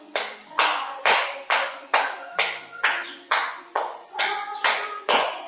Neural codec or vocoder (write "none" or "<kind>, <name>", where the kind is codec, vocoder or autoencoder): vocoder, Vocos